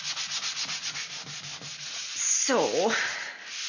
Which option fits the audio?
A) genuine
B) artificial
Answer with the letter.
A